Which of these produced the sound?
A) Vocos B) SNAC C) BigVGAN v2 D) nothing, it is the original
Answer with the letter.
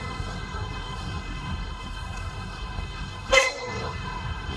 B